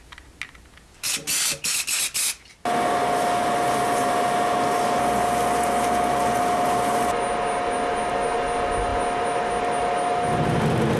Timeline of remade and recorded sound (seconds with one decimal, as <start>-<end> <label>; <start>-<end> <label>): 0.0-11.0 recorded